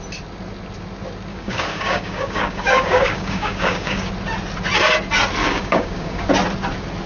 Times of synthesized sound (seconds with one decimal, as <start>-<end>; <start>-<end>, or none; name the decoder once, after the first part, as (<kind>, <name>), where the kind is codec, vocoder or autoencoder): 1.3-4.1 (codec, DAC); 5.4-6.3